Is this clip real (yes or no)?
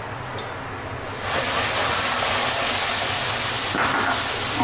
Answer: yes